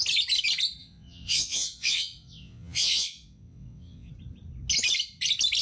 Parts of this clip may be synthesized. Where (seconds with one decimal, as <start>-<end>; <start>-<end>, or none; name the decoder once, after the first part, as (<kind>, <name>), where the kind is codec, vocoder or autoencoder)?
0.8-4.1 (vocoder, WaveNeXt)